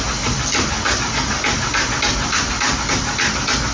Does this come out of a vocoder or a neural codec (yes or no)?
no